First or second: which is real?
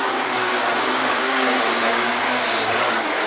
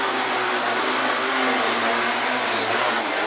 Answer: second